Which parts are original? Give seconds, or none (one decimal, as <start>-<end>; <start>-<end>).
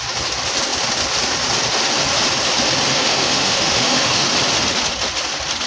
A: 0.0-2.9; 4.3-5.7